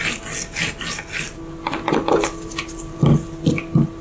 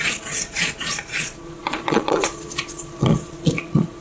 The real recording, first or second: first